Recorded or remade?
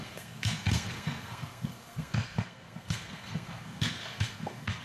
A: remade